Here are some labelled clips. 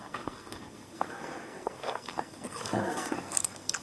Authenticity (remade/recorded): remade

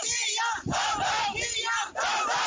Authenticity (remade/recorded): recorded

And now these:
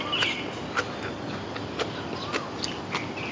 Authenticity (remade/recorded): recorded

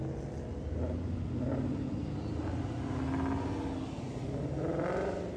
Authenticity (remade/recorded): recorded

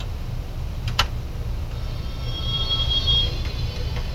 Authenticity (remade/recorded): remade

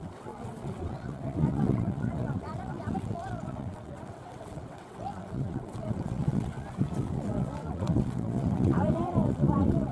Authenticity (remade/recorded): remade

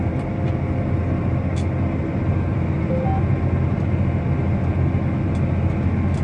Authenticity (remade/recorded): recorded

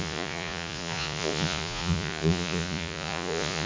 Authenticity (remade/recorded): remade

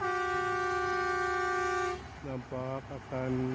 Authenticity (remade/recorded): recorded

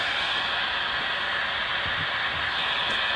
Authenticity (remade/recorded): recorded